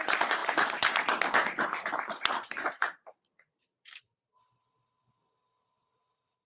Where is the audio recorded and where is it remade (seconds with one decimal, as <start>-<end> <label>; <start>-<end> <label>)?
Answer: 0.0-6.5 remade